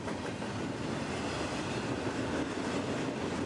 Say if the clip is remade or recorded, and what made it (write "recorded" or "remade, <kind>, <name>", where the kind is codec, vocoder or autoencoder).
recorded